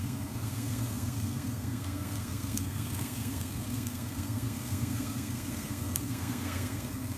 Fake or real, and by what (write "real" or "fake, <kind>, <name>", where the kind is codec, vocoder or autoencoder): fake, codec, SNAC